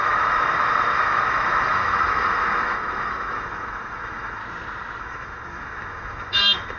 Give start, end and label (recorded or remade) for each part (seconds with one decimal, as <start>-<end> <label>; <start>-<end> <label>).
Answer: 0.0-4.4 remade; 4.4-5.0 recorded; 5.0-6.8 remade